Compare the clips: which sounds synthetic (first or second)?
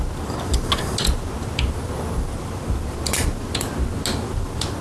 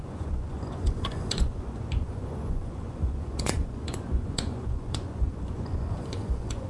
second